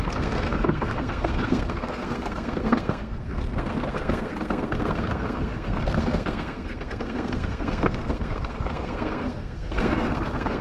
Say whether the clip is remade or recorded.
remade